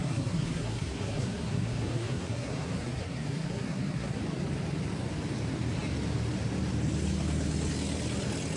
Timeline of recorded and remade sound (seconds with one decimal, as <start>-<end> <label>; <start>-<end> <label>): 0.0-4.2 remade; 4.2-8.6 recorded